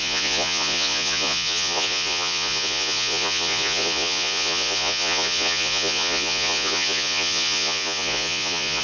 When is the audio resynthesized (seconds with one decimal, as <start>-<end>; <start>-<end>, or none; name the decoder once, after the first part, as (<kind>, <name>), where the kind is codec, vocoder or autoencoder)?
0.0-8.8 (vocoder, Vocos)